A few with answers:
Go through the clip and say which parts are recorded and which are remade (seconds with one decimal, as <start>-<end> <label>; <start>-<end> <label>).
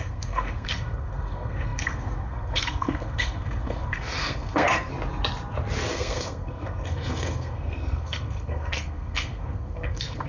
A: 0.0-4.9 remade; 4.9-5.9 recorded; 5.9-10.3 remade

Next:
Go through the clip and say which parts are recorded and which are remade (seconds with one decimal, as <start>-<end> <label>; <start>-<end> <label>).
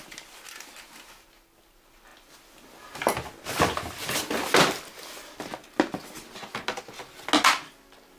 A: 0.0-8.2 recorded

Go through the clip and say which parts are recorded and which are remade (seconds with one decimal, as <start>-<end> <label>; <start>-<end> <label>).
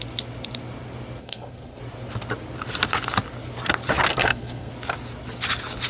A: 0.0-1.2 recorded; 1.2-1.8 remade; 1.8-4.1 recorded; 4.1-4.7 remade; 4.7-5.9 recorded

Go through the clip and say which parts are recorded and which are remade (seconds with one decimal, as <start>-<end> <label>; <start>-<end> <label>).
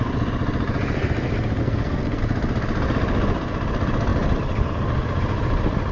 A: 0.0-1.6 recorded; 1.6-2.2 remade; 2.2-5.9 recorded